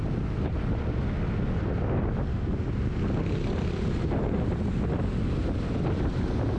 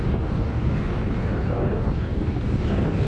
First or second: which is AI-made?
second